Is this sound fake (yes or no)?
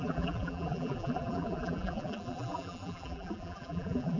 yes